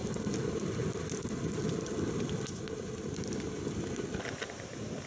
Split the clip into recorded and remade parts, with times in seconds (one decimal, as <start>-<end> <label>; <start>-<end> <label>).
0.0-5.1 recorded